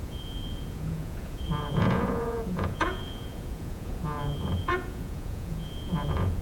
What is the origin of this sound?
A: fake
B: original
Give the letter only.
A